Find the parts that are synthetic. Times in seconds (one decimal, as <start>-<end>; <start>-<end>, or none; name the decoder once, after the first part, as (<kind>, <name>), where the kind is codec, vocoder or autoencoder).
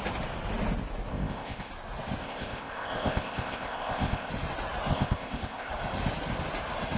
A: 1.1-1.7 (codec, ZipCodec); 2.2-4.3; 4.9-5.7